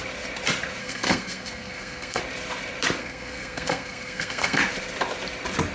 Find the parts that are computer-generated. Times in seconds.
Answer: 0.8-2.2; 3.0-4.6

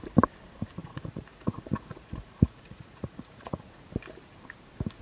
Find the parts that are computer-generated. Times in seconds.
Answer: 0.8-3.8

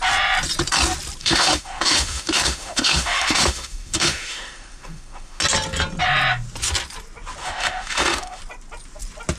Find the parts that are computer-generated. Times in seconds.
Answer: 1.2-5.4; 7.4-8.4